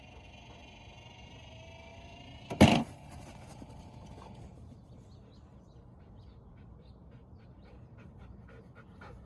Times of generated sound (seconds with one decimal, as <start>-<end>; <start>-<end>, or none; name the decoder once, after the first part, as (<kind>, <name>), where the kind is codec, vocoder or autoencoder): none